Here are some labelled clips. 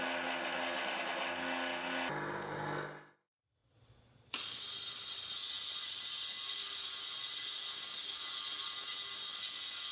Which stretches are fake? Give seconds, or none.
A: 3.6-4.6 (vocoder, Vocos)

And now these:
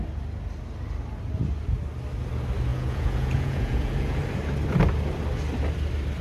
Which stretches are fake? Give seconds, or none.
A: 2.7-4.2 (vocoder, Vocos)